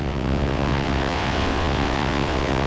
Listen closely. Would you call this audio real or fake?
fake